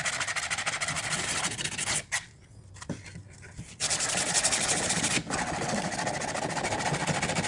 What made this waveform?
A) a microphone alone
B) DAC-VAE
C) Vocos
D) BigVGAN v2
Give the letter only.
A